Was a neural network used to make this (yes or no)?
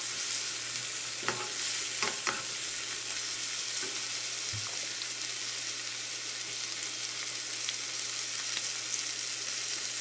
no